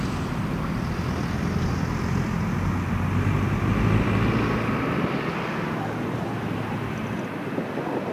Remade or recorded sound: recorded